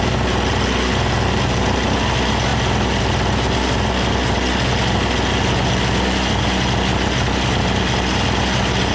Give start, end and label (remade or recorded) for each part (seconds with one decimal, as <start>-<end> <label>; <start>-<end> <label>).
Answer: 0.0-8.9 recorded